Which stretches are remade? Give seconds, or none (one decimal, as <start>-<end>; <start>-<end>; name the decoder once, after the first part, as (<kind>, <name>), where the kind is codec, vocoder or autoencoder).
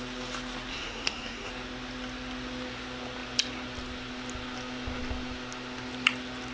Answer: 0.7-1.5 (codec, SNAC)